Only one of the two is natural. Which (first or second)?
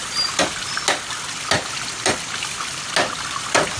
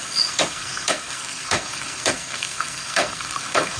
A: first